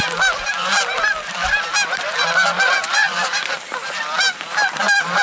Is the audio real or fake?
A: fake